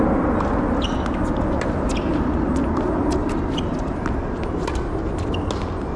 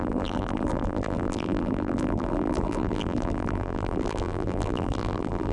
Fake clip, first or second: second